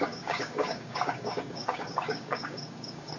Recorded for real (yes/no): no